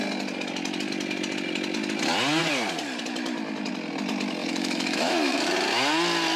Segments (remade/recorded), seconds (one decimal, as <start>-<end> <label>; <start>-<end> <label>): 0.0-4.4 recorded; 4.4-5.5 remade; 5.5-6.4 recorded